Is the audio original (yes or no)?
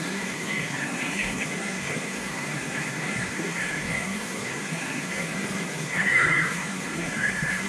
no